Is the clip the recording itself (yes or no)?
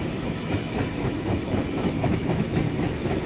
no